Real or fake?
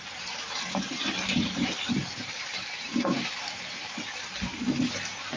fake